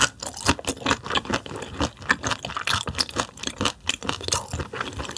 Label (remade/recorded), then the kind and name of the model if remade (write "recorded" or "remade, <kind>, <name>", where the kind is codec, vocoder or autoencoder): recorded